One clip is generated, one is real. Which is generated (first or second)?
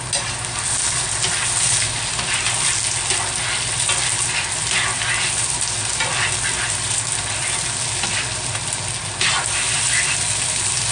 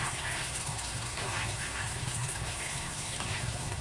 second